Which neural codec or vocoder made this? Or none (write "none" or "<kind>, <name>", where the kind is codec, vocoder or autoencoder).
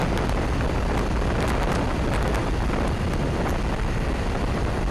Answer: none